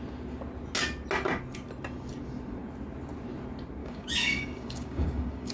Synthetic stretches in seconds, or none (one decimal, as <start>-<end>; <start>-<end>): 3.8-5.5